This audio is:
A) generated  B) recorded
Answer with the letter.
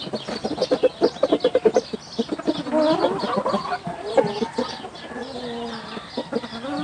B